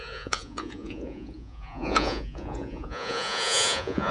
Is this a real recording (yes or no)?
no